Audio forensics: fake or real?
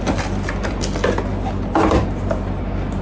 real